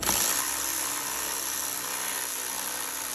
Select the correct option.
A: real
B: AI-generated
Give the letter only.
A